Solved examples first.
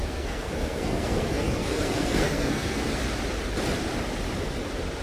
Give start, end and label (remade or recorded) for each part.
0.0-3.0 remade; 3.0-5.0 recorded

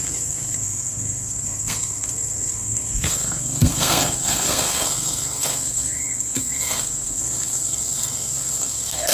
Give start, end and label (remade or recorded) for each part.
0.0-9.1 remade

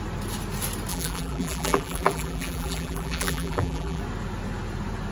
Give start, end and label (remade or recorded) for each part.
0.0-0.9 recorded; 0.9-4.0 remade; 4.0-5.1 recorded

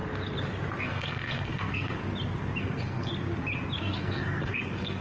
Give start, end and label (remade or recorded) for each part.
0.0-0.8 recorded; 0.8-2.0 remade; 2.0-2.6 recorded; 2.6-3.1 remade; 3.1-3.8 recorded; 3.8-5.0 remade

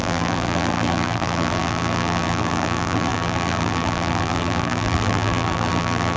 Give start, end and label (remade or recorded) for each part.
0.0-6.2 remade

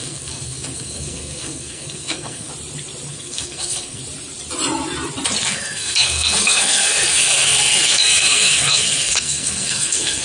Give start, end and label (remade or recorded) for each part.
0.0-2.5 remade; 2.5-3.1 recorded; 3.1-4.0 remade; 4.0-5.4 recorded; 5.4-10.2 remade

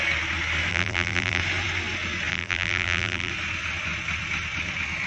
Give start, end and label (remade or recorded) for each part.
0.0-0.7 recorded; 0.7-1.4 remade; 1.4-2.3 recorded; 2.3-3.3 remade; 3.3-5.1 recorded

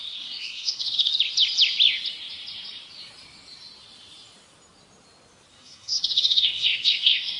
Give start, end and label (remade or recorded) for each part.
0.0-1.1 remade; 1.1-5.5 recorded; 5.5-7.4 remade